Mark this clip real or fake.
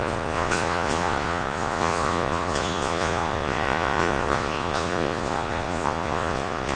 fake